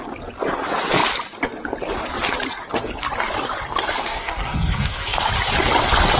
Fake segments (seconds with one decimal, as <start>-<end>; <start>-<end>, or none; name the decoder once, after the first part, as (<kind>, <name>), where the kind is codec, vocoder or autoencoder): 4.0-5.2 (codec, SNAC)